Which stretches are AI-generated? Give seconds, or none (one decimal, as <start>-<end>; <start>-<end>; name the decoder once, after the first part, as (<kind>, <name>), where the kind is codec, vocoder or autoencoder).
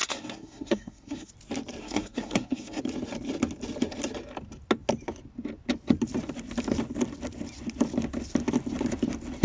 0.0-1.3 (codec, SNAC); 1.8-2.8